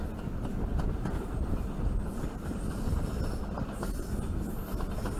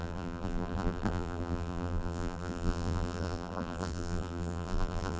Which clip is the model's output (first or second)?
second